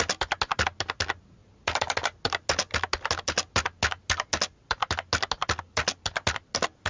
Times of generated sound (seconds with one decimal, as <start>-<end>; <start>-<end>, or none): none